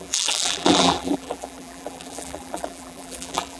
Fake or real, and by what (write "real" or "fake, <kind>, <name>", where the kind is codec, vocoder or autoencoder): fake, vocoder, BigVGAN v2